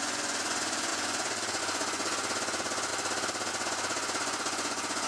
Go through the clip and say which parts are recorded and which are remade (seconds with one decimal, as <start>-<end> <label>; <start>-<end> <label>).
0.0-2.9 remade; 2.9-3.5 recorded; 3.5-5.1 remade